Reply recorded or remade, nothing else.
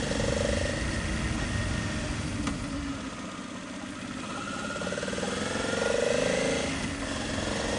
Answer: recorded